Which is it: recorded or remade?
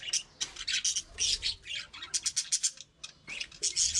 recorded